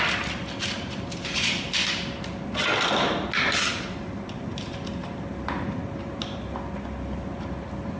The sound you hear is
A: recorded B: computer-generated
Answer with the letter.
A